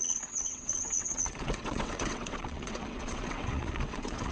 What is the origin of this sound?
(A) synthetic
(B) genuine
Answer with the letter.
A